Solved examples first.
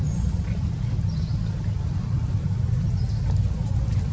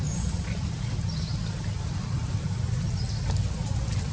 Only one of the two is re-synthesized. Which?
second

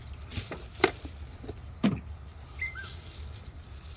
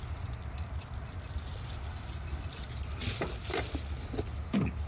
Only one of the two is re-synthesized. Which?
first